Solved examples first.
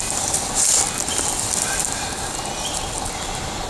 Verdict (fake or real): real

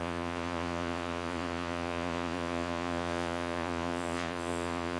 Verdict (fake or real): fake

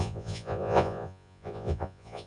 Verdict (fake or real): fake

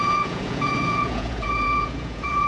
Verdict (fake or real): fake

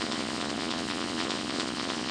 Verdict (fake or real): fake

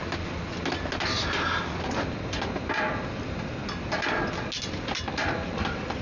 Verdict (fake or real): real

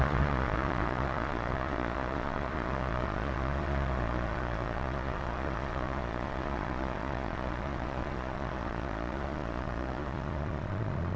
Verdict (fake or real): fake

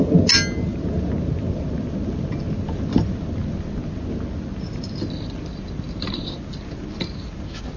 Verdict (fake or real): real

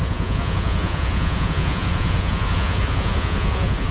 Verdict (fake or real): fake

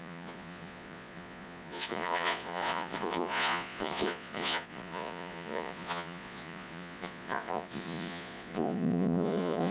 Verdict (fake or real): fake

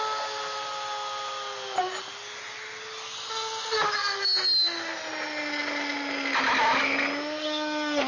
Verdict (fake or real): real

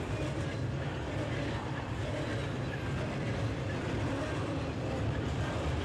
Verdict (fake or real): real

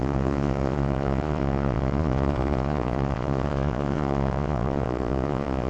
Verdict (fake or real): fake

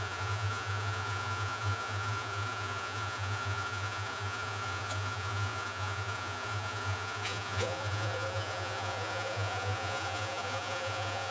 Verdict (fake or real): fake